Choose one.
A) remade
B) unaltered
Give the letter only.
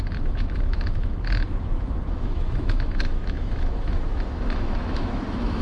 A